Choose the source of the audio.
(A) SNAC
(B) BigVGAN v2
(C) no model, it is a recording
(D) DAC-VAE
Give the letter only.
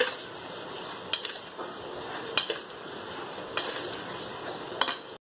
C